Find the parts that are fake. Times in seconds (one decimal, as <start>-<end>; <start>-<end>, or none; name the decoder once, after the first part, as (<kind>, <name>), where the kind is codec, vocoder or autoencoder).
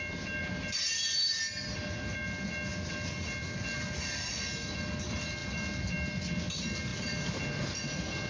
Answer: none